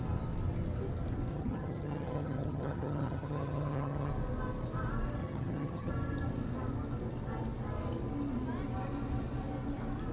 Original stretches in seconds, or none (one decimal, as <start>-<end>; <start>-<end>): 0.0-1.3; 4.1-5.2; 5.9-10.1